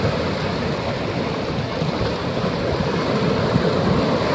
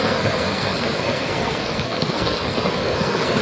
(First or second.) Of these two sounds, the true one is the first